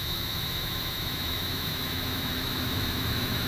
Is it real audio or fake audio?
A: fake